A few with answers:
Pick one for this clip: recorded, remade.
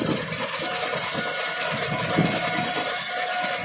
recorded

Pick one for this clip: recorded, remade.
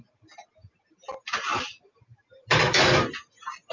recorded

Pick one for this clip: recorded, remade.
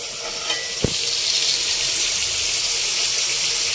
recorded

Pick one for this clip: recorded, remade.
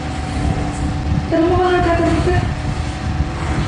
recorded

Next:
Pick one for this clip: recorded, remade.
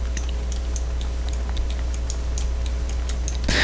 recorded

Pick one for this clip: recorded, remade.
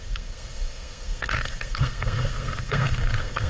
remade